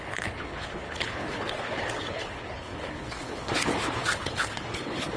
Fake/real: fake